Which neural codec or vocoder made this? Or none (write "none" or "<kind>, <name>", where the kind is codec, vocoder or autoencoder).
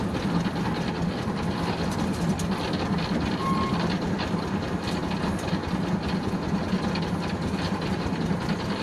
none